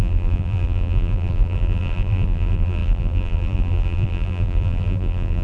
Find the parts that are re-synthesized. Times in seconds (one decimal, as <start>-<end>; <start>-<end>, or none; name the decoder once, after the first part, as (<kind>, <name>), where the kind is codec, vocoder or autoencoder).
0.0-5.4 (vocoder, BigVGAN v2)